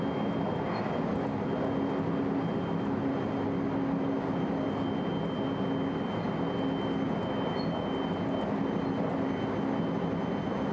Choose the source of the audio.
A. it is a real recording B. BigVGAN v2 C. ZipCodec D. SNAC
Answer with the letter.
A